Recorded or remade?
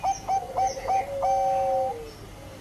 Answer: recorded